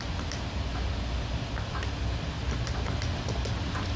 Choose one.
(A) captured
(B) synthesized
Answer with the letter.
A